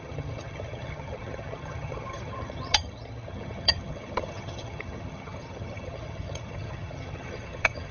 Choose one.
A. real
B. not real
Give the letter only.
B